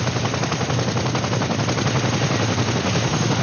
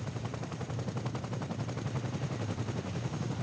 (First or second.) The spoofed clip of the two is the second